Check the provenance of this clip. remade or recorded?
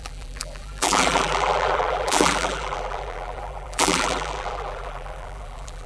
remade